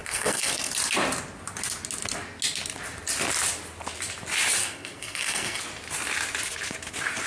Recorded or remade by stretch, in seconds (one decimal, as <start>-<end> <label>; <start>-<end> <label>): 0.0-0.7 remade; 0.7-4.6 recorded; 4.6-5.6 remade; 5.6-7.3 recorded